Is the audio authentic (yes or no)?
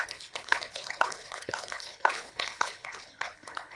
no